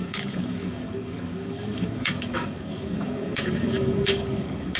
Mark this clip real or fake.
fake